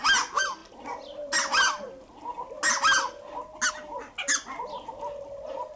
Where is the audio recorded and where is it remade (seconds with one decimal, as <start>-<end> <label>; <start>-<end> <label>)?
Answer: 0.0-5.8 recorded